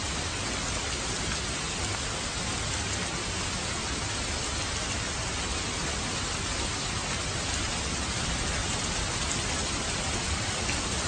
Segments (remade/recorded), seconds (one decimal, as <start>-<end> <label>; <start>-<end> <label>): 0.0-8.6 recorded; 8.6-9.2 remade; 9.2-11.1 recorded